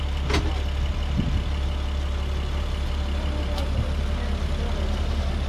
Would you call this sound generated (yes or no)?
no